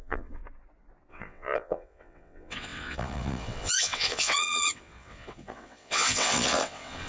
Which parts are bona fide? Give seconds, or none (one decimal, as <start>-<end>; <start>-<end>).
0.4-1.1